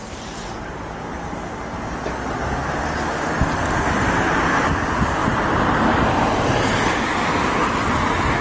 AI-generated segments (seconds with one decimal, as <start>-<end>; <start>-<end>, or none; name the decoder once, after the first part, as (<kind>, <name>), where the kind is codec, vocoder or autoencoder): 0.0-1.8 (vocoder, BigVGAN v2); 5.2-7.1